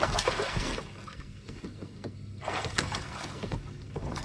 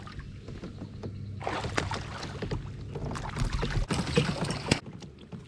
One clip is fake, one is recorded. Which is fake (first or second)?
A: first